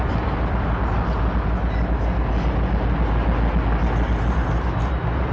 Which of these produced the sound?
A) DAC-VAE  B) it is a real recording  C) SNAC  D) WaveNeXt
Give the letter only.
B